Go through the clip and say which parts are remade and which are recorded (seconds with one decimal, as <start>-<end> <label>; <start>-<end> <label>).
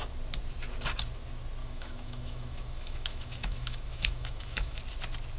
0.0-1.6 recorded; 1.6-4.8 remade; 4.8-5.4 recorded